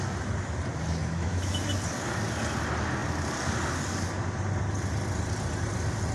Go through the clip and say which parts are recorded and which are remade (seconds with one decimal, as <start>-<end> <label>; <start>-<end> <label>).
0.0-1.0 recorded; 1.0-1.6 remade; 1.6-6.1 recorded